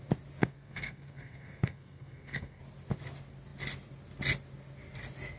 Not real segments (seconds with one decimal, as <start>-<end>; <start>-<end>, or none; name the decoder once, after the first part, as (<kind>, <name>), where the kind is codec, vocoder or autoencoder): 0.4-2.6 (codec, SNAC)